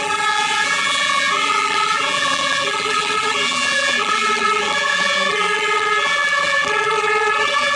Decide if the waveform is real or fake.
fake